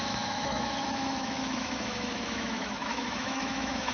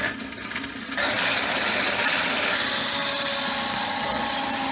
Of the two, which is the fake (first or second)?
first